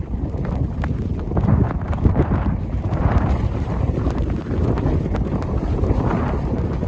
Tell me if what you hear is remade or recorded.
remade